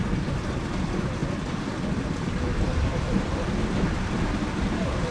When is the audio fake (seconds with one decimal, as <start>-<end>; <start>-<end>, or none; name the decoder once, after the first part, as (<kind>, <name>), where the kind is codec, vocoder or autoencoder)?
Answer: none